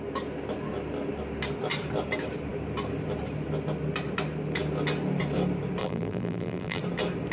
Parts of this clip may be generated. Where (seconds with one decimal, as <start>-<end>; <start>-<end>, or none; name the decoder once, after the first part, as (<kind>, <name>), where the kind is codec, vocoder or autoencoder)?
5.8-6.8 (vocoder, BigVGAN v2)

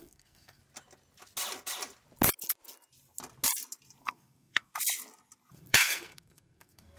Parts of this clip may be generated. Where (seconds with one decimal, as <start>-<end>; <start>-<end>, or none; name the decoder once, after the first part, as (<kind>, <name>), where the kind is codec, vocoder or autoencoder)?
0.0-0.6 (codec, SNAC); 4.0-4.7; 5.5-7.0

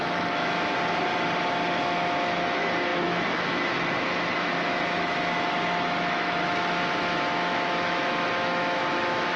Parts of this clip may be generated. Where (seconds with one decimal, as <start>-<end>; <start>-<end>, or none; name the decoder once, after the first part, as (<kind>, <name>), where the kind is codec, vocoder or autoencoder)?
0.0-1.1 (autoencoder, DAC-VAE); 1.8-9.4